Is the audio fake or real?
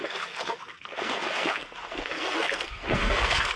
fake